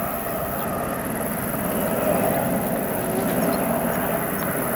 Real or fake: real